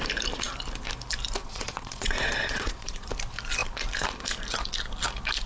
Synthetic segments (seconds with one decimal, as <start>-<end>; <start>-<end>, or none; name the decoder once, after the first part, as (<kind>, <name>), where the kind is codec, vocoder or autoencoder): 1.4-3.1 (vocoder, Vocos)

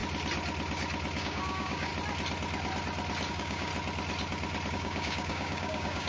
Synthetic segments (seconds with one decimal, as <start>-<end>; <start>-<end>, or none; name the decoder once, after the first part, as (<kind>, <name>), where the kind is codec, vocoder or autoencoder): 1.2-1.9 (codec, DAC); 3.3-3.7; 4.7-6.1